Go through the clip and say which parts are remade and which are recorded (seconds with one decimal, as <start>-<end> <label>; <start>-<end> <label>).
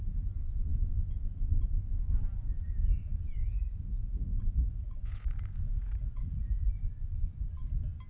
0.0-3.5 recorded; 3.5-5.3 remade; 5.3-5.7 recorded; 5.7-6.7 remade; 6.7-8.1 recorded